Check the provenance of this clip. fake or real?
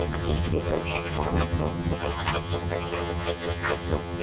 fake